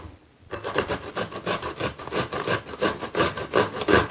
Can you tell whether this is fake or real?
real